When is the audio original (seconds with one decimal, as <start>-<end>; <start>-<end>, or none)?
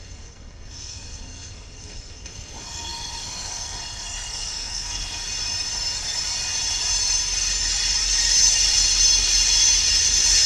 5.2-10.5